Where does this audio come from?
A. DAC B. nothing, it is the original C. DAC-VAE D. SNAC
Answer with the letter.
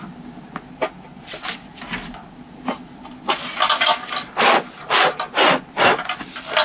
B